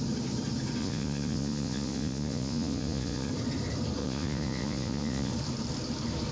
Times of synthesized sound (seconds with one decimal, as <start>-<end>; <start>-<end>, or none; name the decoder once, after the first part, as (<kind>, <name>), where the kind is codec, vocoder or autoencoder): 0.8-3.3 (vocoder, Vocos); 4.0-5.3